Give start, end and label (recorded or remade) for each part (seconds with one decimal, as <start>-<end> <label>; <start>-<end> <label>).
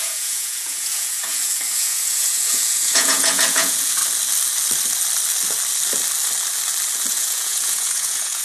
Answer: 0.0-4.0 remade; 4.0-7.1 recorded; 7.1-8.4 remade